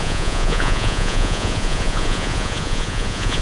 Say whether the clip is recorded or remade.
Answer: remade